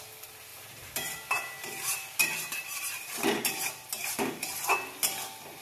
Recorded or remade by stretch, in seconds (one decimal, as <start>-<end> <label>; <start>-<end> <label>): 0.0-0.5 recorded; 0.5-3.9 remade; 3.9-5.6 recorded